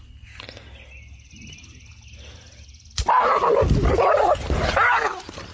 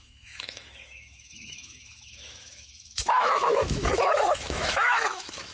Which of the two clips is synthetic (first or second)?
second